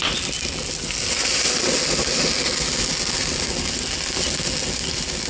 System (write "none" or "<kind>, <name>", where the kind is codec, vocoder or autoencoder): none